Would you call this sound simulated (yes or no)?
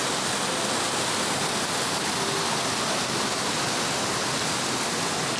no